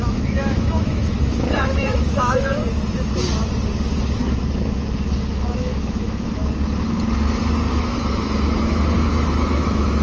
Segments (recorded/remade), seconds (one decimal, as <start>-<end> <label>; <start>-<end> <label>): 0.0-2.6 remade; 2.6-5.3 recorded; 5.3-6.4 remade; 6.4-7.7 recorded; 7.7-10.0 remade